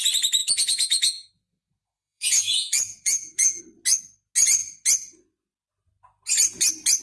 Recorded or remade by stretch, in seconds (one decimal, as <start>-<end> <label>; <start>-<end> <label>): 0.0-0.4 recorded; 0.4-3.6 remade; 3.6-7.0 recorded